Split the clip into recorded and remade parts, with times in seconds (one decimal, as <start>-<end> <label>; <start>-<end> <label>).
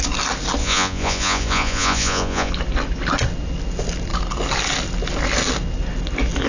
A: 0.0-0.6 recorded; 0.6-2.5 remade; 2.5-6.5 recorded